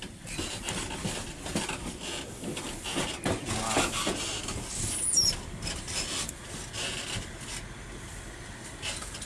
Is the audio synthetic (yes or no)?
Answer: no